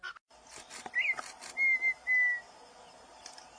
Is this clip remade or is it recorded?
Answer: recorded